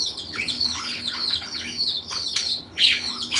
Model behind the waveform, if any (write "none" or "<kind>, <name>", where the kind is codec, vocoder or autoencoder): codec, HILCodec